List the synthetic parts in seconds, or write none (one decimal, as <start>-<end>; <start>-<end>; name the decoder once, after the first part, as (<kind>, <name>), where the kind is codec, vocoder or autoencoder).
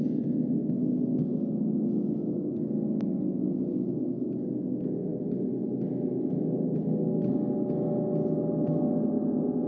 none